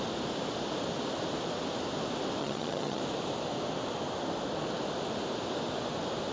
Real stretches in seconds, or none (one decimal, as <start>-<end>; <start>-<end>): 0.0-2.4; 3.0-6.3